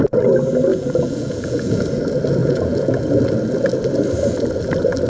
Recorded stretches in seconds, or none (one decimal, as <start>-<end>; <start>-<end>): 0.0-0.7; 1.8-2.4; 3.0-5.1